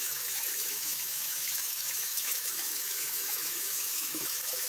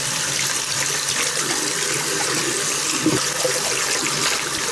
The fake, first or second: first